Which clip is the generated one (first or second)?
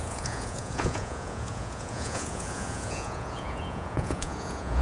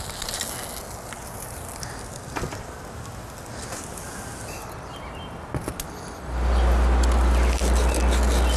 first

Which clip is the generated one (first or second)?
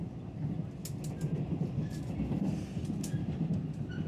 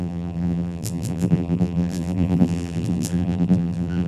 second